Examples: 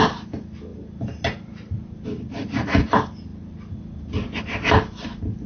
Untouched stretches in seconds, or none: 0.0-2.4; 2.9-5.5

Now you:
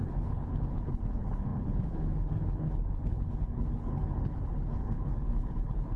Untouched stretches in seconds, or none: none

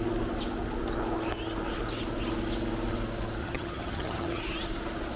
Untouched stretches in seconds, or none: 0.0-3.4; 4.4-5.2